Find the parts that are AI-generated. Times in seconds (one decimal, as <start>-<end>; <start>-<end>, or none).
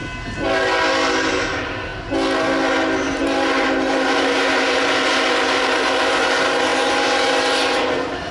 1.3-1.9; 3.2-8.3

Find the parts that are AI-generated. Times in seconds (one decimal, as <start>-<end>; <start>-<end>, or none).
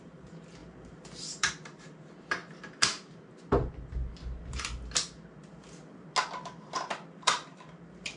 0.0-2.4; 7.1-8.2